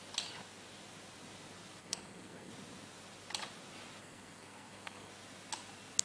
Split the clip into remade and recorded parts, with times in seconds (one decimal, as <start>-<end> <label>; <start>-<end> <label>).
0.0-1.8 recorded; 1.8-2.5 remade; 2.5-4.0 recorded; 4.0-5.1 remade; 5.1-6.0 recorded